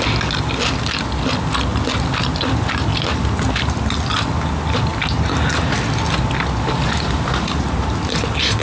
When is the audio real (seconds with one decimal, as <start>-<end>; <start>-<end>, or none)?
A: 0.0-8.6